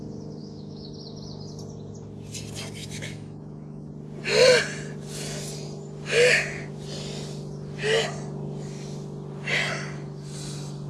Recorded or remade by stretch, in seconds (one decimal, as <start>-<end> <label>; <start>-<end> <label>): 0.0-0.4 recorded; 0.4-0.9 remade; 0.9-2.8 recorded; 2.8-3.9 remade; 3.9-10.9 recorded